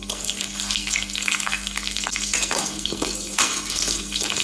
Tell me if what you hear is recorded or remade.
remade